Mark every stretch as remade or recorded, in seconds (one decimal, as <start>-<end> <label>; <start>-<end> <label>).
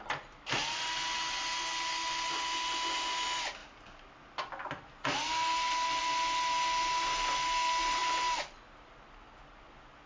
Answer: 0.0-10.1 recorded